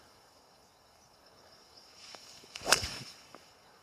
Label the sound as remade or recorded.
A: remade